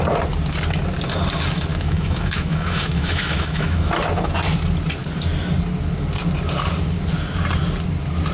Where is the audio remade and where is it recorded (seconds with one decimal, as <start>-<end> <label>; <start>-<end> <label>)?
0.0-1.7 recorded; 1.7-3.9 remade; 3.9-8.3 recorded

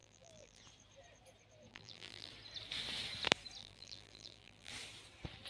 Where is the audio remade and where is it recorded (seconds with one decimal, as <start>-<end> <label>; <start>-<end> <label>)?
0.0-0.6 remade; 0.6-1.7 recorded; 1.7-2.3 remade; 2.3-3.6 recorded; 3.6-4.7 remade; 4.7-5.5 recorded